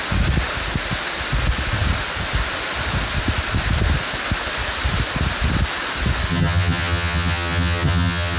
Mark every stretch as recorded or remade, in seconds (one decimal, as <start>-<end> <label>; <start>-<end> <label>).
0.0-6.3 recorded; 6.3-8.4 remade